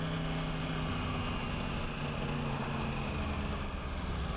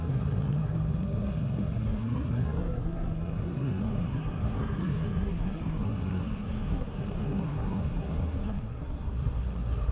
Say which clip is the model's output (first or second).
second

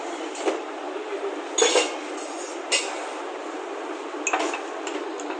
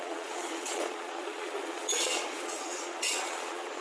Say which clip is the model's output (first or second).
second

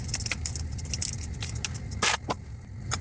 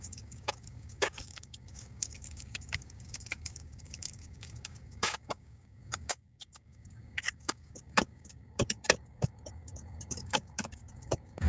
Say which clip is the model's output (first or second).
second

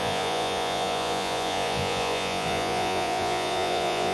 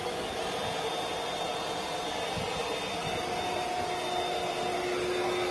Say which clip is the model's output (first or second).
first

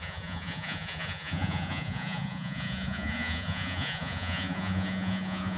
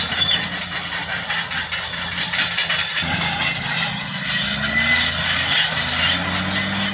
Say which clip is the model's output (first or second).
first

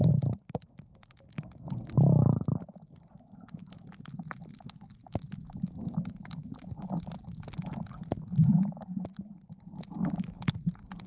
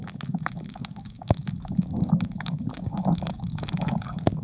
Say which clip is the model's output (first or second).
second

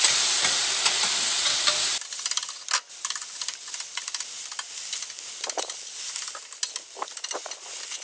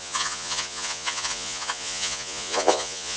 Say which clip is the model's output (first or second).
second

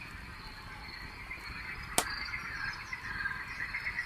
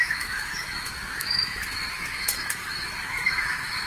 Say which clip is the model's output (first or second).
second